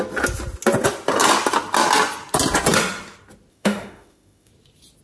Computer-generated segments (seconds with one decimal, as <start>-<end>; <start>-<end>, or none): 3.5-4.5